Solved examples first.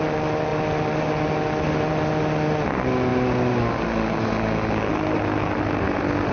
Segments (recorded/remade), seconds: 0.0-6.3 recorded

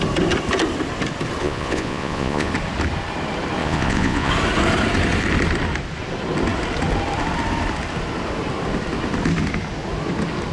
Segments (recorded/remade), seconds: 0.0-1.4 recorded; 1.4-2.5 remade; 2.5-3.6 recorded; 3.6-4.3 remade; 4.3-10.5 recorded

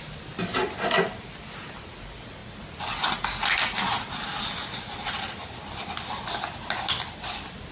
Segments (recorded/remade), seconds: 0.0-7.7 recorded